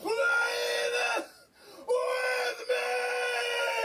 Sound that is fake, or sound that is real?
real